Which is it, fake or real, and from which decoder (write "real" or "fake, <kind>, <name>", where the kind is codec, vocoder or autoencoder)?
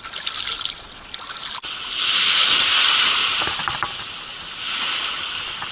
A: real